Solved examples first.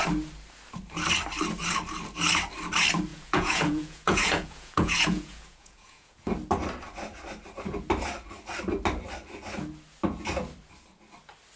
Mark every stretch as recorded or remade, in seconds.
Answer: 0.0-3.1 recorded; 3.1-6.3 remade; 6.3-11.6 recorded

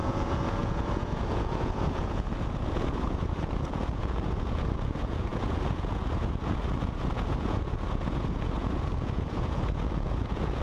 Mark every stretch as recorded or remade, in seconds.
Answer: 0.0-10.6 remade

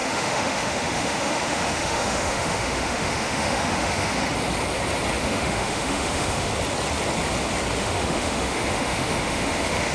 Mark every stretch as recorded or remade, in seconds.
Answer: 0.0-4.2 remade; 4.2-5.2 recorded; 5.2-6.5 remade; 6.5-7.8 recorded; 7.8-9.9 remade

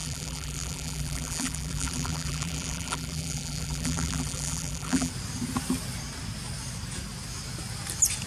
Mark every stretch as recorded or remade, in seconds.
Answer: 0.0-5.1 remade; 5.1-8.3 recorded

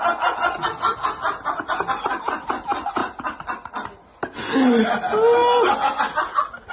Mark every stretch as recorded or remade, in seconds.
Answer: 0.0-0.9 recorded; 0.9-2.2 remade; 2.2-3.0 recorded; 3.0-4.9 remade; 4.9-6.7 recorded

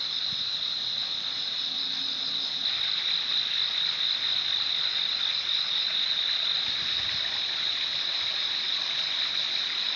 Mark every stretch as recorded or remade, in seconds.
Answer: 0.0-10.0 recorded